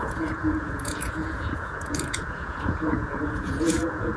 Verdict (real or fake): fake